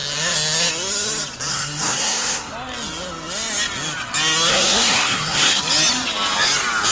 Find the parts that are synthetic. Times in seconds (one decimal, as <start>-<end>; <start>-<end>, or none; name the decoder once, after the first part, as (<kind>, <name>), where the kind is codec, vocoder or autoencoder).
1.5-2.5 (codec, SNAC); 4.5-5.6